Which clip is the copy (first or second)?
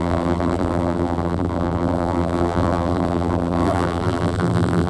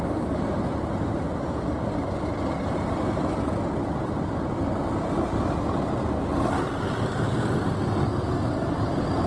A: first